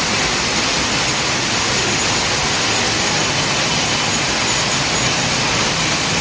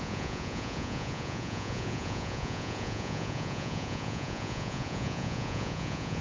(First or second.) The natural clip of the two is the first